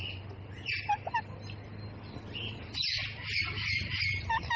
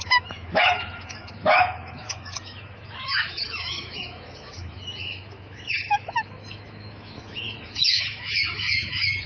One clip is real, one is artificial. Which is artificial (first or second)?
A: second